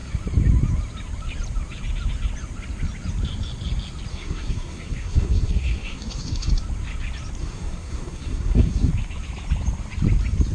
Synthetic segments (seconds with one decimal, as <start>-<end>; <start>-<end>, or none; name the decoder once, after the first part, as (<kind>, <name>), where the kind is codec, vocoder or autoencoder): 4.1-6.5 (codec, SNAC); 7.4-8.9